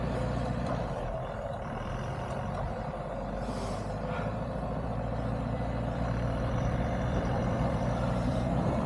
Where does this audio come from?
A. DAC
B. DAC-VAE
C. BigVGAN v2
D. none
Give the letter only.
C